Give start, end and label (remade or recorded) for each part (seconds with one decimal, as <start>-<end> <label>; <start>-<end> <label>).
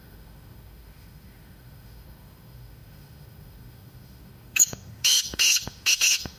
0.0-6.4 remade